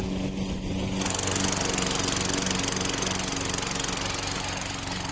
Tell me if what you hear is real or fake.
real